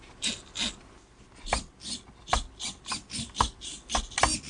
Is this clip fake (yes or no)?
no